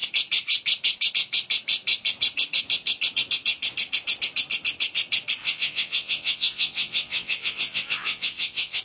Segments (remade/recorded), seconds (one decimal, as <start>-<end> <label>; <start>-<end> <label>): 0.0-5.4 recorded; 5.4-8.8 remade